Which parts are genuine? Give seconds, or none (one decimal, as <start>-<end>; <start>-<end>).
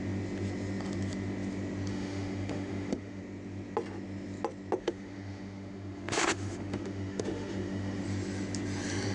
0.0-1.9; 3.2-4.8; 8.0-9.1